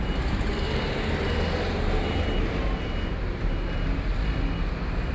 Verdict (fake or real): real